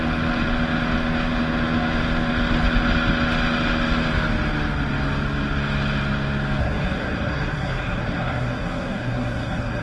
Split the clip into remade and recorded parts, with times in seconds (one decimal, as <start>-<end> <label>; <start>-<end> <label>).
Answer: 0.0-6.6 recorded; 6.6-9.8 remade